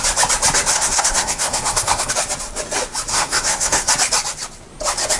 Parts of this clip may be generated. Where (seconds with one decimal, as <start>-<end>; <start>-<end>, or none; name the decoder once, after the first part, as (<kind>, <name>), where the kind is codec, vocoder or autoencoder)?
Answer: 0.7-2.1 (codec, SNAC); 3.1-3.9